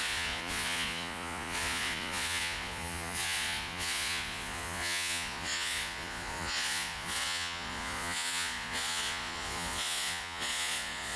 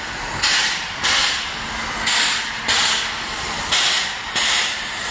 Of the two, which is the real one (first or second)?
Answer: second